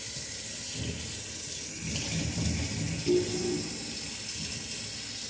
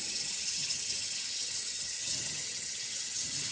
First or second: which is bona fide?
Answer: first